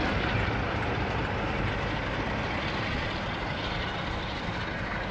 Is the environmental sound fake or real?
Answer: real